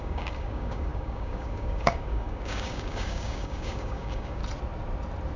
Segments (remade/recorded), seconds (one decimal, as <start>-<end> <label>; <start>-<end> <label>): 0.0-4.4 remade; 4.4-5.4 recorded